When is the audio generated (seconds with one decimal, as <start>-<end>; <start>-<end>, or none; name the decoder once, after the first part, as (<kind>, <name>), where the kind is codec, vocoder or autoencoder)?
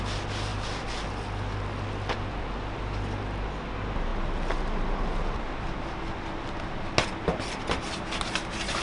none